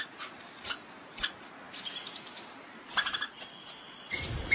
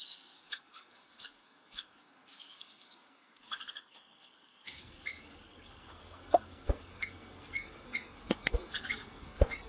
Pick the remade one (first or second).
second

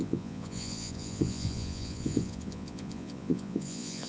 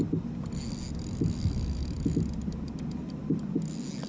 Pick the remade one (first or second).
first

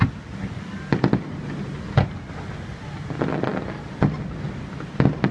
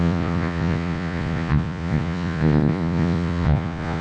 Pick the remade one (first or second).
second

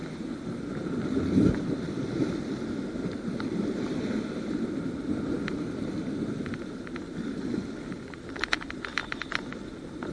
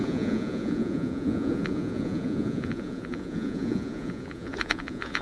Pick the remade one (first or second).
second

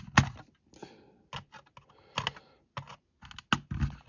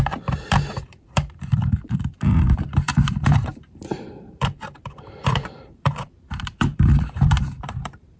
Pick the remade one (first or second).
second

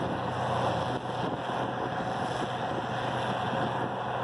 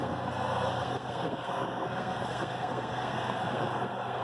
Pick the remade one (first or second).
second